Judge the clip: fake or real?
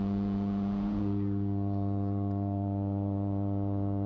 fake